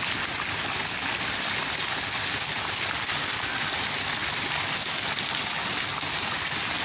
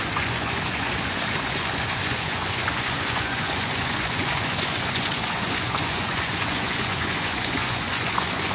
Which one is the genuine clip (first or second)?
first